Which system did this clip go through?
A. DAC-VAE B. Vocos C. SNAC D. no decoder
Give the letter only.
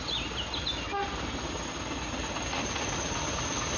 D